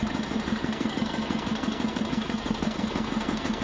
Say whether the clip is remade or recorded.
remade